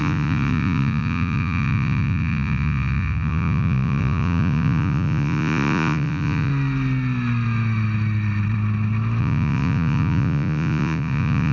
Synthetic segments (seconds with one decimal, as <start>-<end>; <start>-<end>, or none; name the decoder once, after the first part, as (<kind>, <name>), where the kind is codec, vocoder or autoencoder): 0.0-6.5 (vocoder, Vocos); 9.2-11.5